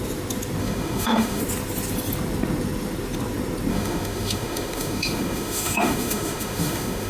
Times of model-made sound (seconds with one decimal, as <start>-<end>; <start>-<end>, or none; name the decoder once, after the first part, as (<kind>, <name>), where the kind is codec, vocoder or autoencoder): 0.6-1.4 (autoencoder, DAC-VAE); 3.7-7.1